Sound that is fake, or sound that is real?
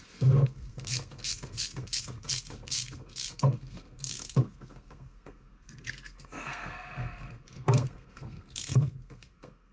fake